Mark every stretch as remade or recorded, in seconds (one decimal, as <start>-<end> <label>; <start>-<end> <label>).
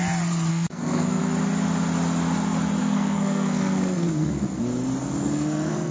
0.0-0.5 recorded; 0.5-1.2 remade; 1.2-2.8 recorded; 2.8-4.6 remade; 4.6-5.0 recorded; 5.0-5.9 remade